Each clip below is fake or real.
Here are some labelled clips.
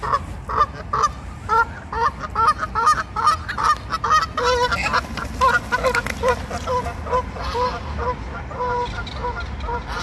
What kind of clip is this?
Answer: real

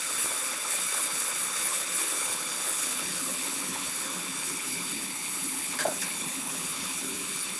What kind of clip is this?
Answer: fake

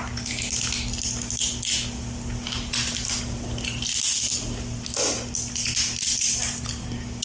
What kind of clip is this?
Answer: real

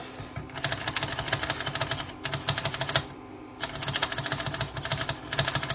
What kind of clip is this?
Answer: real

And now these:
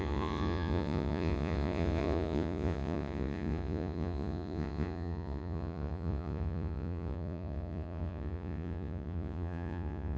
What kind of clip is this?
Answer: fake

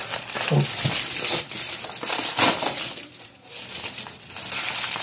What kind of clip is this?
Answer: fake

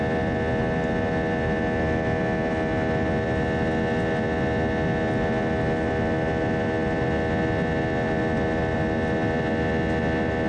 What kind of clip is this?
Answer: real